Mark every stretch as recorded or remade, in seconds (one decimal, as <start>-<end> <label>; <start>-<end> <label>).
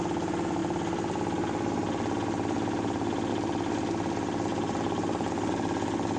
0.0-4.5 recorded; 4.5-5.5 remade; 5.5-6.2 recorded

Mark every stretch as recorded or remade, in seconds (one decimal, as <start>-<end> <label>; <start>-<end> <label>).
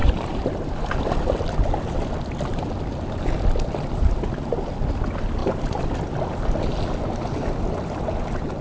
0.0-1.0 remade; 1.0-5.4 recorded; 5.4-5.9 remade; 5.9-8.6 recorded